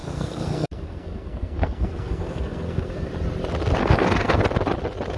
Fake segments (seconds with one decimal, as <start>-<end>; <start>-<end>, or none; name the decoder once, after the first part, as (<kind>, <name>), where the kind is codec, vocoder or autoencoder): 0.0-3.1 (codec, SNAC); 3.8-4.4